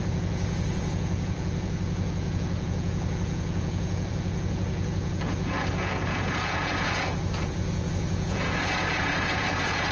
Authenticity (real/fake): fake